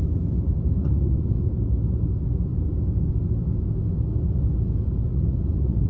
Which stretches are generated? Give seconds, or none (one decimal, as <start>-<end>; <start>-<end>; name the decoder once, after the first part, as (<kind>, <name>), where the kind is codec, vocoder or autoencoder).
0.8-1.4 (vocoder, Vocos); 5.1-5.9